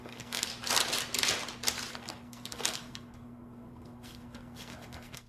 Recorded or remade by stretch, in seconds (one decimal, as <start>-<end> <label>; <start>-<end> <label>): 0.0-0.5 remade; 0.5-1.9 recorded; 1.9-5.3 remade